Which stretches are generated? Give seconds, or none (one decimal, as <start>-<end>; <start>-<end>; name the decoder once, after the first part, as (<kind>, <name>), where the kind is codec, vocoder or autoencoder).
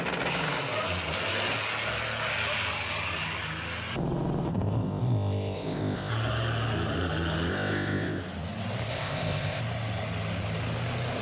4.5-6.1 (codec, ZipCodec); 7.5-8.2; 8.9-9.6